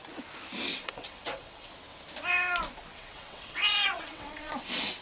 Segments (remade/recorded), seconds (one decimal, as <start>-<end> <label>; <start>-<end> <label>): 0.0-0.7 recorded; 0.7-1.7 remade; 1.7-2.9 recorded; 2.9-4.5 remade; 4.5-5.0 recorded